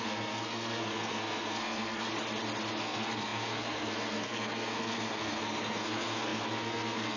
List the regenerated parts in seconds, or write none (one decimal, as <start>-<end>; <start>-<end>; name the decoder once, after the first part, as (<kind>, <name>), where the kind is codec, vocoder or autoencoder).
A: 0.0-2.1 (codec, SNAC); 2.8-7.2